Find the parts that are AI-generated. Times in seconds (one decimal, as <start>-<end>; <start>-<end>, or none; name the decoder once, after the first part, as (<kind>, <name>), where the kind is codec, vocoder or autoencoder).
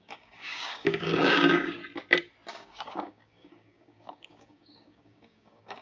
0.0-1.8 (codec, DAC); 2.5-5.8